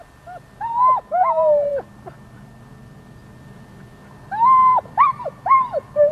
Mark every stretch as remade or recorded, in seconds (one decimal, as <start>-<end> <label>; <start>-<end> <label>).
0.0-4.6 recorded; 4.6-6.1 remade